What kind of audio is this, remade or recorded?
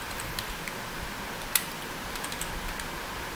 recorded